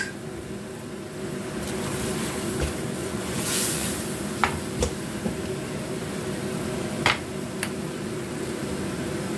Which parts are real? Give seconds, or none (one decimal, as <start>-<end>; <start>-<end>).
0.0-3.0; 3.9-9.4